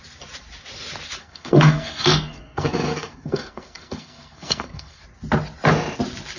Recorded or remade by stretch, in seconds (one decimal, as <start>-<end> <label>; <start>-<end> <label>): 0.0-1.2 recorded; 1.2-5.0 remade; 5.0-6.4 recorded